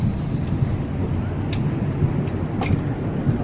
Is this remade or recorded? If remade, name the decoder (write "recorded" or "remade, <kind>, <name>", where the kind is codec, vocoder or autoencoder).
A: recorded